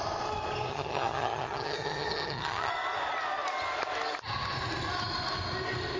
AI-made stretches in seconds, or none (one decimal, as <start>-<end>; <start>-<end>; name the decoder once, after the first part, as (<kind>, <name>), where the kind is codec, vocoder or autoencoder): 0.7-2.7 (vocoder, HiFi-GAN)